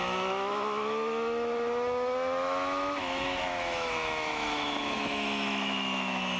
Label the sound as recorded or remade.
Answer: remade